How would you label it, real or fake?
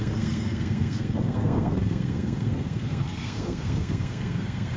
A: fake